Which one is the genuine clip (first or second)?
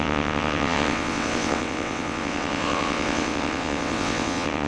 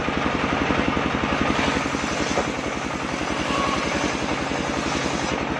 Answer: second